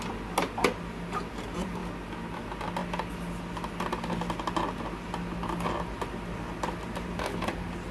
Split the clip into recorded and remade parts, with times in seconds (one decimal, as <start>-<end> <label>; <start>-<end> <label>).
0.0-7.9 recorded